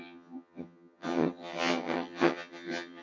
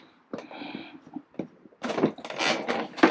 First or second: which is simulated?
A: first